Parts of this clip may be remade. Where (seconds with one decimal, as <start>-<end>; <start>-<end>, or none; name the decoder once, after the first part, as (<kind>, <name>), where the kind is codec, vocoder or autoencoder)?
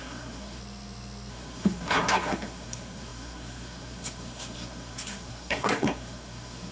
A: 0.0-0.6 (codec, SNAC); 1.3-6.7